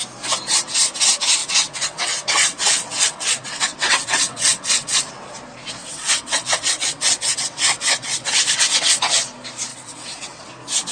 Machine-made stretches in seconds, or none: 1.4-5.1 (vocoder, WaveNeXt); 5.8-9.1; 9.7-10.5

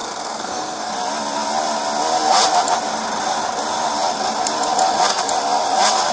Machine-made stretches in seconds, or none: 0.0-0.9 (codec, SNAC)

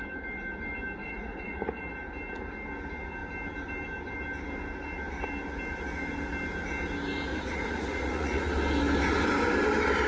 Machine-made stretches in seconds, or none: 1.0-1.8 (vocoder, Vocos); 7.3-8.5

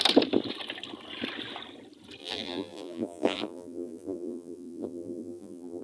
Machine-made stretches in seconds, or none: 2.2-5.8 (vocoder, BigVGAN v2)

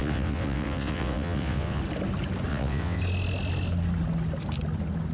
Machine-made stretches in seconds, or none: 0.0-1.8 (vocoder, WaveNeXt); 2.5-3.0